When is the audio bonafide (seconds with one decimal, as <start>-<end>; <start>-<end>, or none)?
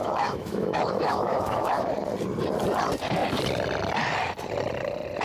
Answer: 1.9-5.2